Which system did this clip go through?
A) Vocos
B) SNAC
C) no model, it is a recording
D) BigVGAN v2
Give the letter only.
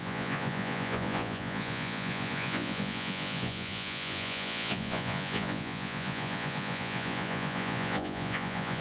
A